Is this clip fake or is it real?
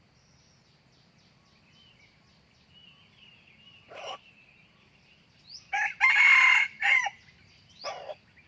real